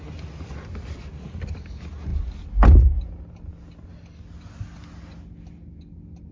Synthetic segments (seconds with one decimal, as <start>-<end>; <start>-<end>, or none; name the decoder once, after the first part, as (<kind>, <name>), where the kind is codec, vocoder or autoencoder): none